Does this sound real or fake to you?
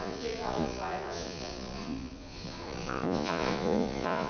fake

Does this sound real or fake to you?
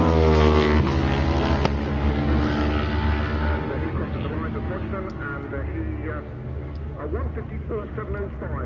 real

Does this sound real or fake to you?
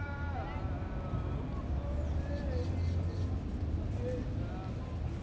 real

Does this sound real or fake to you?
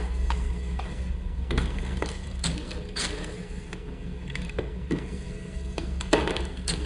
fake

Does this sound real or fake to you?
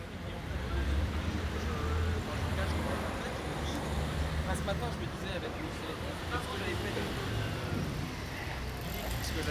fake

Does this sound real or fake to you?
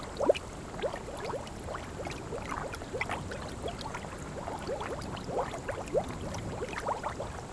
real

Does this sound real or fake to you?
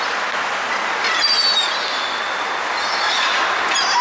real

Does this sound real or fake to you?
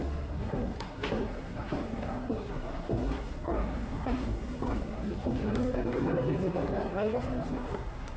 fake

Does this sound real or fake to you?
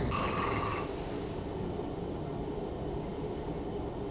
real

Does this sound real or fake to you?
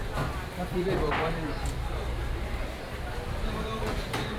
fake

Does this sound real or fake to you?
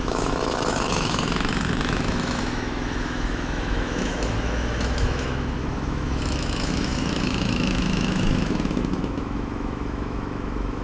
fake